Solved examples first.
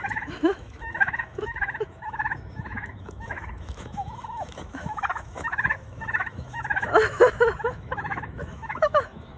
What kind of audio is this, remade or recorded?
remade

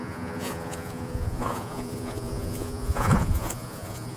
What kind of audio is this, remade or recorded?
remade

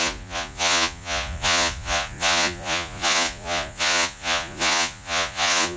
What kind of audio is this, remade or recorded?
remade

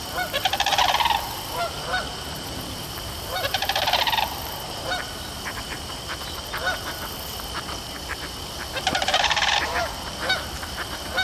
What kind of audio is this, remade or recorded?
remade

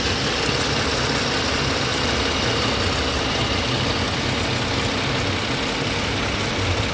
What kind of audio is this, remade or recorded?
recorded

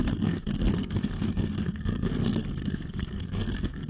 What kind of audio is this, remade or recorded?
remade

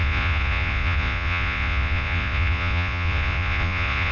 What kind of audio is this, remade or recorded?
remade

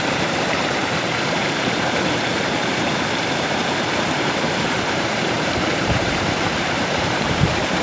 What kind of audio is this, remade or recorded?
remade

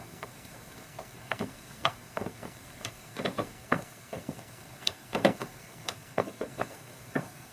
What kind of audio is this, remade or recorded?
remade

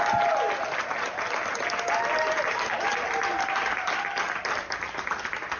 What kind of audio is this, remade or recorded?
recorded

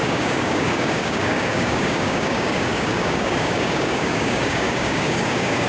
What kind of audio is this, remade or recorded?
remade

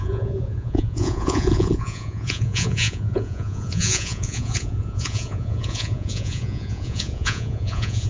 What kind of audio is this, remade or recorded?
remade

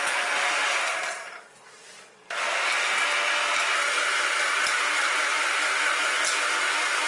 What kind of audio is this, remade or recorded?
recorded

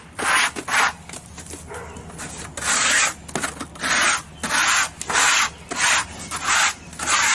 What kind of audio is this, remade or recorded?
recorded